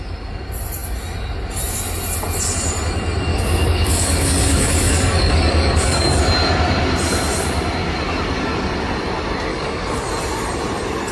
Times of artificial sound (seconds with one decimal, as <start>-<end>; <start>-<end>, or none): 3.3-6.2; 9.5-10.1